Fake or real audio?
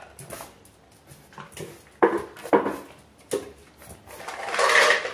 real